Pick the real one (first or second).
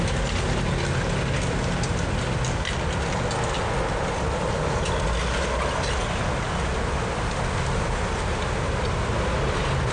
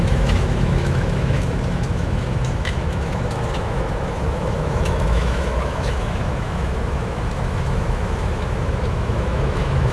first